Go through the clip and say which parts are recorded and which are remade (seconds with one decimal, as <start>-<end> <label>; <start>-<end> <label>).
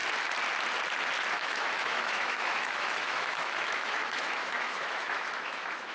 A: 0.0-1.3 recorded; 1.3-5.9 remade